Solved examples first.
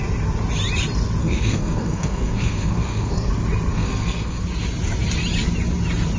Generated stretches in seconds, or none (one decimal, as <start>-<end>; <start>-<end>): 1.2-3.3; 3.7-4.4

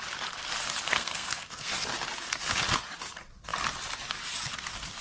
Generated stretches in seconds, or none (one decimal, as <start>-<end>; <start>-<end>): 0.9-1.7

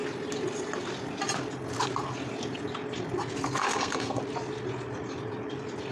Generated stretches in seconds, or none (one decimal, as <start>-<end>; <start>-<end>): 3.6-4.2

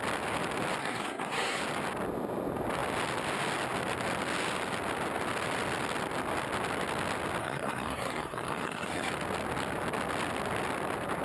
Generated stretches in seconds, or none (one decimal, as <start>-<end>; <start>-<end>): 0.8-1.6; 7.4-9.1

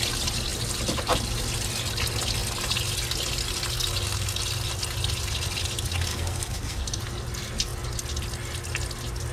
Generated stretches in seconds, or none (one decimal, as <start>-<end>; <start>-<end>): 6.1-7.0

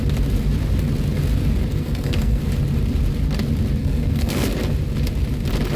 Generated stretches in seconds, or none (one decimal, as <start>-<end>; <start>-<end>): 1.7-2.4; 3.8-4.5

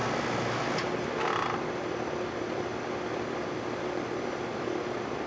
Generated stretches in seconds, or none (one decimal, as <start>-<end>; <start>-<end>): none